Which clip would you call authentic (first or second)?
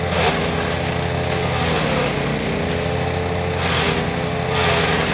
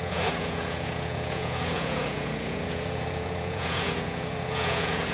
first